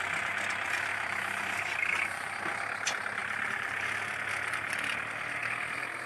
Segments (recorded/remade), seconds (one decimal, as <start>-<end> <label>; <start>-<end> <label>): 0.0-0.9 recorded; 0.9-2.4 remade; 2.4-3.2 recorded; 3.2-4.0 remade; 4.0-6.1 recorded